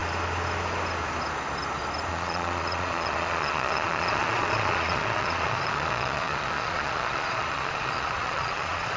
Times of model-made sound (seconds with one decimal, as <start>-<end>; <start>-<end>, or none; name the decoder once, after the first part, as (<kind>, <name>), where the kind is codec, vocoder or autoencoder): 2.1-9.0 (vocoder, Vocos)